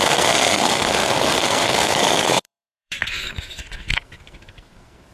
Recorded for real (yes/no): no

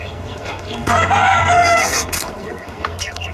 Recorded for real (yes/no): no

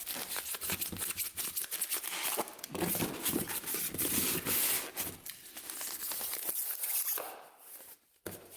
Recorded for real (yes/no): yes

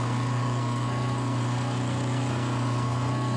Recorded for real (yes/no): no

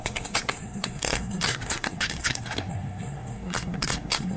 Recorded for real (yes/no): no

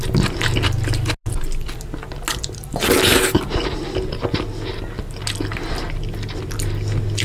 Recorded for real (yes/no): yes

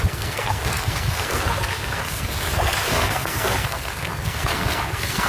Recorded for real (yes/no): no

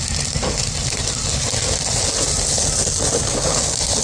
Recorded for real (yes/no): yes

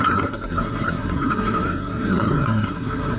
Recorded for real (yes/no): no